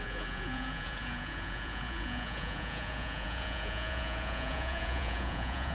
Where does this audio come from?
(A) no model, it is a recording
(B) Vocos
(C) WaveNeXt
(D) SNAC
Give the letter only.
B